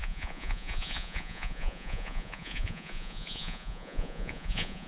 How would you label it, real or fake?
fake